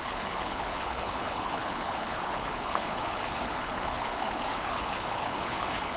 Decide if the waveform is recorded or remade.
remade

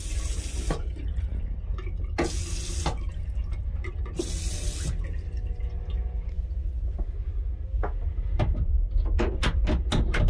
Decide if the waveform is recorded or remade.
recorded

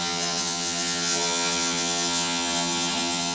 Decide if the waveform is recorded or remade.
remade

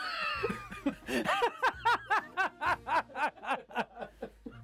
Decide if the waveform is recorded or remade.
recorded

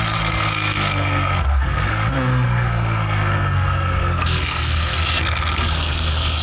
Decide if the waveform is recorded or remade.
remade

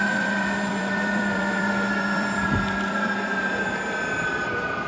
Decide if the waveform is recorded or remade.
remade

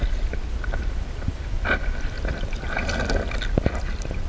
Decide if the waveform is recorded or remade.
recorded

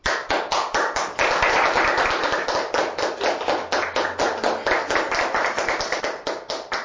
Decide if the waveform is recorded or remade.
recorded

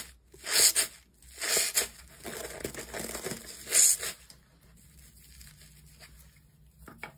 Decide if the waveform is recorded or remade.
recorded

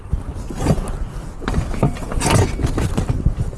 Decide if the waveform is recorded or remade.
recorded